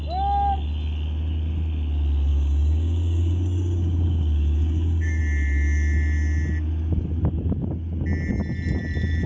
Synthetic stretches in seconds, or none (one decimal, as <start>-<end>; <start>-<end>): 2.3-5.2